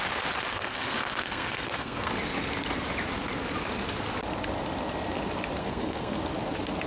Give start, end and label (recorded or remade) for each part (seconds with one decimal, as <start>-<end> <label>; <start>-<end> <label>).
0.0-0.5 recorded; 0.5-2.1 remade; 2.1-5.6 recorded; 5.6-6.2 remade; 6.2-6.9 recorded